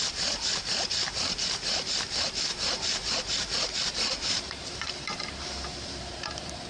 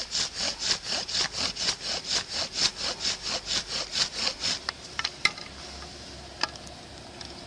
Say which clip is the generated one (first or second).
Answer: first